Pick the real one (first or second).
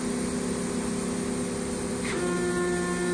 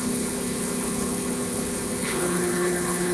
first